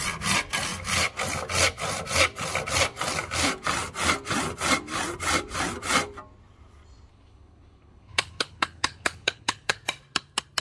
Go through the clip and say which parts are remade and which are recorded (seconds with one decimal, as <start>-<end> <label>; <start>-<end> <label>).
0.0-7.1 recorded; 7.1-9.8 remade; 9.8-10.6 recorded